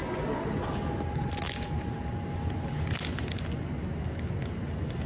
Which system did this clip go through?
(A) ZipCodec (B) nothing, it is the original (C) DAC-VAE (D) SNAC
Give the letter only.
B